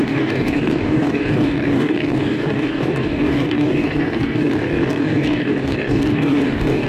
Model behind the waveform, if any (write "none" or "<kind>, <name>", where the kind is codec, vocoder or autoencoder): codec, DAC